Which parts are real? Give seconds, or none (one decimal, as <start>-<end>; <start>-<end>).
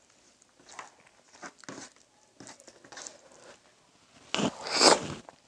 0.0-5.5